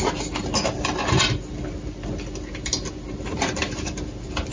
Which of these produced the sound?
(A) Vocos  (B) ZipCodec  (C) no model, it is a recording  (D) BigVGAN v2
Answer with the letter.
C